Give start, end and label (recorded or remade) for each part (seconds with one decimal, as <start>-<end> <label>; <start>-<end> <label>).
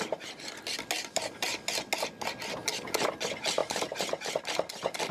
0.0-3.6 recorded; 3.6-4.4 remade; 4.4-5.1 recorded